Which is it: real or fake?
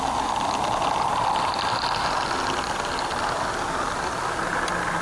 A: real